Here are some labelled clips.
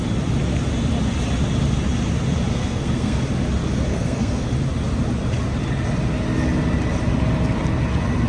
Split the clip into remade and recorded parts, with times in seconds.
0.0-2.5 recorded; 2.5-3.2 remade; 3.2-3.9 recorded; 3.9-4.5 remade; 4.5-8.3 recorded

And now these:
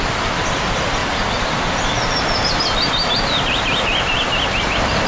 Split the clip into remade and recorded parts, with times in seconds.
0.0-5.1 recorded

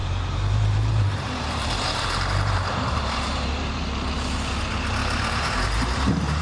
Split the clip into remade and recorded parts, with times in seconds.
0.0-3.8 remade; 3.8-5.0 recorded; 5.0-6.4 remade

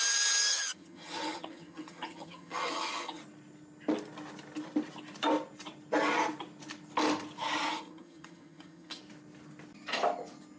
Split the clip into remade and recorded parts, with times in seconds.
0.0-0.5 recorded; 0.5-3.2 remade; 3.2-7.7 recorded; 7.7-9.0 remade; 9.0-10.6 recorded

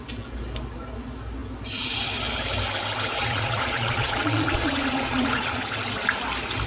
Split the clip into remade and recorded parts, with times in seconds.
0.0-3.2 recorded; 3.2-5.6 remade; 5.6-6.7 recorded

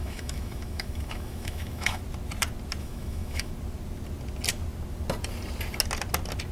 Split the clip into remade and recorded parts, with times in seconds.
0.0-2.0 remade; 2.0-2.8 recorded; 2.8-3.5 remade; 3.5-6.5 recorded